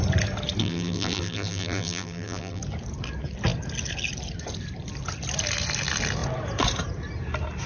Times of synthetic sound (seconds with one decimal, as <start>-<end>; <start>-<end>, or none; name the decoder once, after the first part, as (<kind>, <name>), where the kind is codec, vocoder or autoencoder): 0.6-2.6 (vocoder, BigVGAN v2)